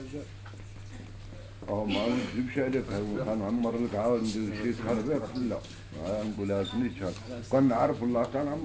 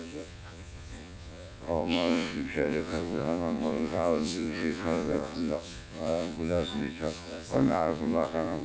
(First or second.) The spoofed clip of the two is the second